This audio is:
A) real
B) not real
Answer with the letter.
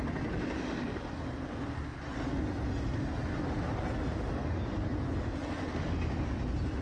A